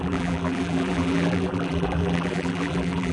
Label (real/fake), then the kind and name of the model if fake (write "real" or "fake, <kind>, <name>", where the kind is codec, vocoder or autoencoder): fake, vocoder, BigVGAN v2